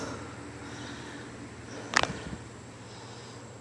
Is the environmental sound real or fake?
real